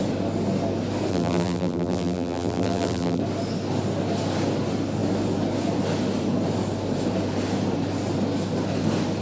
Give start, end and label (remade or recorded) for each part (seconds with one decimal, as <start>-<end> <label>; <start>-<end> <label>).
0.0-1.1 recorded; 1.1-3.2 remade; 3.2-9.2 recorded